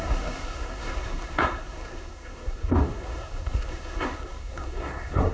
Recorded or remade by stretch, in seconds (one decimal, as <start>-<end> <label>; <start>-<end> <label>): 0.0-5.3 remade

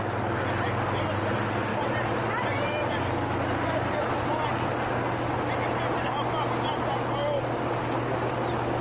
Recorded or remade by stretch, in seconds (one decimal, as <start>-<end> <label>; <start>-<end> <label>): 0.0-8.8 recorded